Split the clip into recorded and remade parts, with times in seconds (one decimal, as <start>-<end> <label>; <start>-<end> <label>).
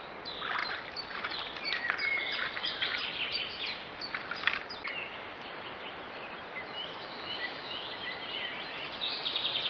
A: 0.0-6.9 recorded; 6.9-7.9 remade; 7.9-9.7 recorded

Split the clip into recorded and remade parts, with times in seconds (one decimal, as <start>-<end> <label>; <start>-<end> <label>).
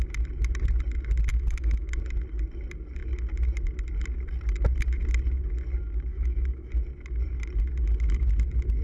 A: 0.0-1.3 recorded; 1.3-2.0 remade; 2.0-6.1 recorded; 6.1-6.7 remade; 6.7-8.8 recorded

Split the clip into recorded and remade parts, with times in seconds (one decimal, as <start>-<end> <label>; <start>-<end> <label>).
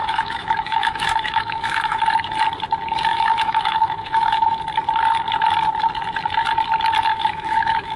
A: 0.0-2.0 remade; 2.0-3.1 recorded; 3.1-4.6 remade; 4.6-7.1 recorded; 7.1-8.0 remade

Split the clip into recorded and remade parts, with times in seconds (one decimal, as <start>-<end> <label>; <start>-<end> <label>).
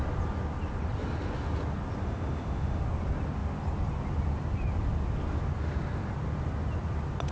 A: 0.0-2.0 recorded; 2.0-2.8 remade; 2.8-7.3 recorded